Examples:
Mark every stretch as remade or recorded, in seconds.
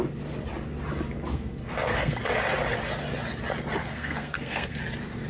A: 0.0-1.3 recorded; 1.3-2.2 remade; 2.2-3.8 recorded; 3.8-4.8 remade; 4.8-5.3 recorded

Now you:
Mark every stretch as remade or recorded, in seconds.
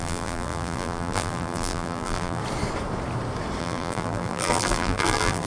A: 0.0-2.4 remade; 2.4-3.6 recorded; 3.6-5.5 remade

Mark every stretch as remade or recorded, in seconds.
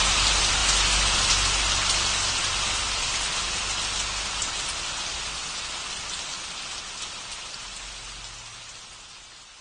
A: 0.0-9.6 recorded